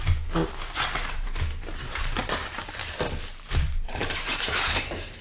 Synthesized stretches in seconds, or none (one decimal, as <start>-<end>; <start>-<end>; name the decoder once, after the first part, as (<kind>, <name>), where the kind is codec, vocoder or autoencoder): 0.0-5.2 (vocoder, BigVGAN v2)